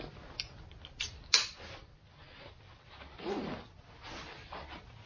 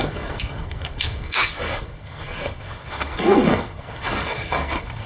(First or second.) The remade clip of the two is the second